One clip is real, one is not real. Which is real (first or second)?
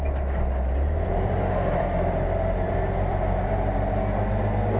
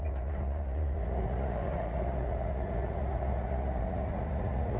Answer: first